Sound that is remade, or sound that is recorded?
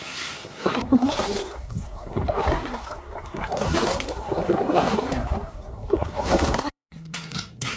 remade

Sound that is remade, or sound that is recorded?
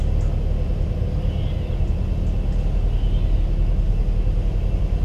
recorded